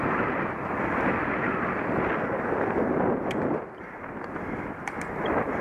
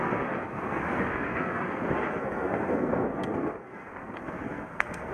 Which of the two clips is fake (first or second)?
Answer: second